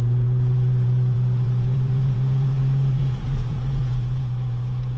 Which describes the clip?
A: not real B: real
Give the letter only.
A